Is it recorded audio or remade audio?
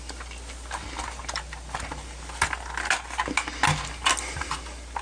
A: recorded